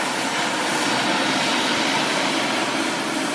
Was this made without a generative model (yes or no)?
yes